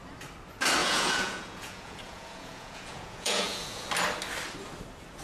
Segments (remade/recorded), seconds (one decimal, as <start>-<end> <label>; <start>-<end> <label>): 0.0-0.8 recorded; 0.8-3.9 remade; 3.9-5.2 recorded